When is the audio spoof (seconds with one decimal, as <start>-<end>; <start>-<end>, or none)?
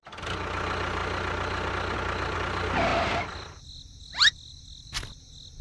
none